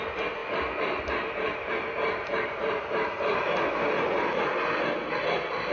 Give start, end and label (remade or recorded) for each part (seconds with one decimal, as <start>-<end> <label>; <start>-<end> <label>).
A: 0.0-2.0 recorded; 2.0-3.5 remade; 3.5-5.7 recorded